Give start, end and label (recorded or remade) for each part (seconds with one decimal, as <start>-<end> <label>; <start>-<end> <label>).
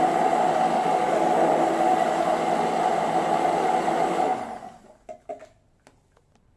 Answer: 0.0-6.6 recorded